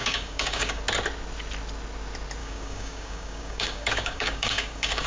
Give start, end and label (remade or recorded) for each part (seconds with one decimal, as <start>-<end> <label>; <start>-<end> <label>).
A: 0.0-0.8 remade; 0.8-2.4 recorded; 2.4-5.1 remade